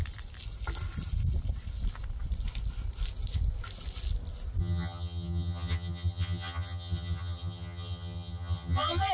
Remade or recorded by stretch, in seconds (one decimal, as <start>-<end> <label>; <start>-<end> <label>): 0.0-4.6 recorded; 4.6-9.1 remade